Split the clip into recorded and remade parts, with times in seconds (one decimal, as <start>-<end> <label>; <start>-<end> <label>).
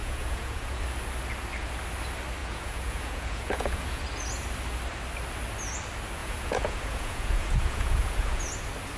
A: 0.0-0.8 remade; 0.8-2.4 recorded; 2.4-4.0 remade; 4.0-6.2 recorded; 6.2-8.5 remade; 8.5-9.0 recorded